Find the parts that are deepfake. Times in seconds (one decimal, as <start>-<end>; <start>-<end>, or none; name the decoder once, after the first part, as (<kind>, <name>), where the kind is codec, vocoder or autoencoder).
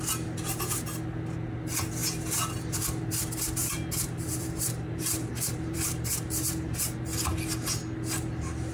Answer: 3.6-7.3 (vocoder, BigVGAN v2)